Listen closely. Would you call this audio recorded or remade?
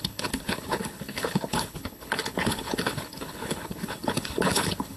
remade